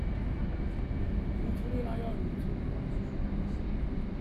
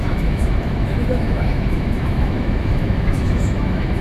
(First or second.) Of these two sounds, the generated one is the second